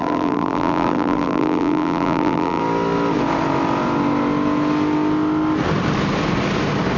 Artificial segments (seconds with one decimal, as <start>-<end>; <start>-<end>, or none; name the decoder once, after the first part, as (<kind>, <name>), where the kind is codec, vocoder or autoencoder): 0.0-2.6 (vocoder, BigVGAN v2)